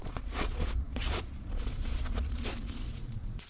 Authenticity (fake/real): fake